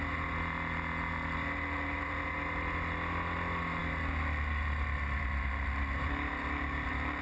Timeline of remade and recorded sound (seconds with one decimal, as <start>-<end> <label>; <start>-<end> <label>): 0.0-7.2 recorded